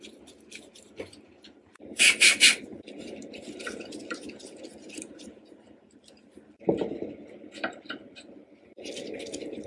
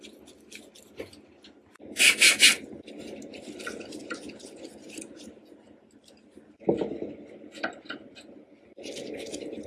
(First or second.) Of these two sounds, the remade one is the first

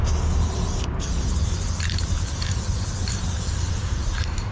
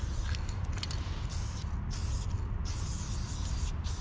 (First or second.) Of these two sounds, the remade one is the first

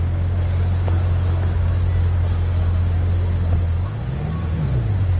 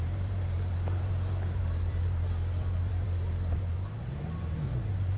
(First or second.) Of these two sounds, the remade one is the second